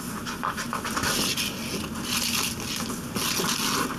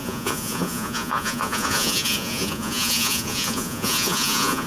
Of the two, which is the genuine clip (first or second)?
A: first